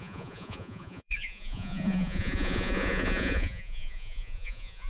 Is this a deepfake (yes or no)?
yes